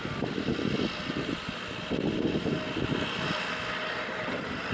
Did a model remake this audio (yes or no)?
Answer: no